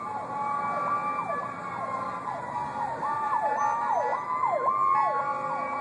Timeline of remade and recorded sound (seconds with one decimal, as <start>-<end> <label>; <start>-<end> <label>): 0.0-5.8 recorded